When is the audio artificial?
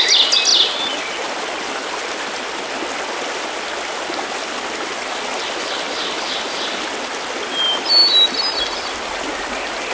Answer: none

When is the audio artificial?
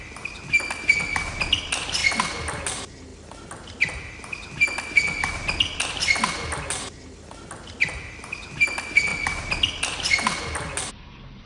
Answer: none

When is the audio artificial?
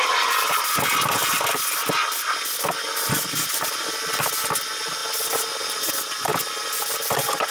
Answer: none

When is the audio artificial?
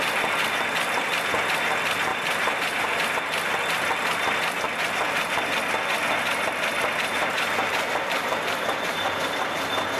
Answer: 2.1-3.1 (vocoder, BigVGAN v2); 7.2-9.2